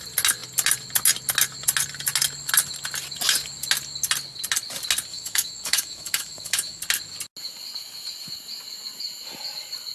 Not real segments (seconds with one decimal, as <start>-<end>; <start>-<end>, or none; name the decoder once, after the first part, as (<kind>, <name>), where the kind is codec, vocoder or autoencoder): 5.1-6.8 (autoencoder, DAC-VAE)